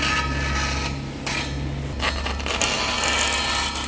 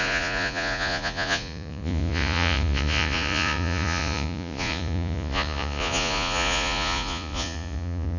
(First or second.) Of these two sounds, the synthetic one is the second